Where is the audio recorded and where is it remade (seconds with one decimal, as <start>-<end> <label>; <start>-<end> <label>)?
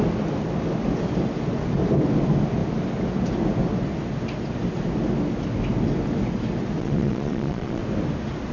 0.0-6.8 recorded; 6.8-7.8 remade; 7.8-8.5 recorded